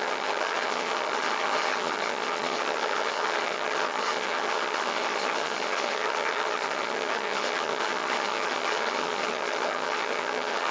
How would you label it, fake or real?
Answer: fake